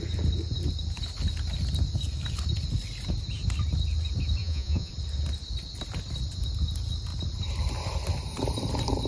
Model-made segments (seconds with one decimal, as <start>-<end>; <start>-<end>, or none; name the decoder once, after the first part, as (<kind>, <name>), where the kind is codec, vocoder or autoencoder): 4.4-4.9 (vocoder, Vocos)